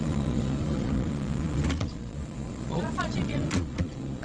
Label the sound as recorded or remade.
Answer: remade